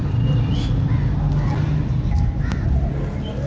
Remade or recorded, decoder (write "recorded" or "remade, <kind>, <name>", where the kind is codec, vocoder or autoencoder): recorded